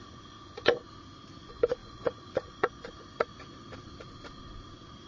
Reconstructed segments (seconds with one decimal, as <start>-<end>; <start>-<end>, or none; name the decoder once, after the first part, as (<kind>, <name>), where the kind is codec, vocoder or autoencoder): 0.0-0.8 (vocoder, Vocos); 1.4-3.3